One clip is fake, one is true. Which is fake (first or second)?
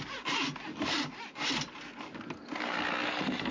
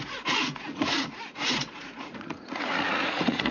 second